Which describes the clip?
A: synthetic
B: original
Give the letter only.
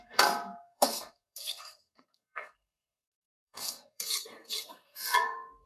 A